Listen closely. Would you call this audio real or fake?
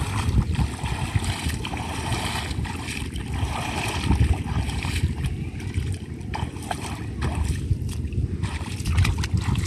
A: real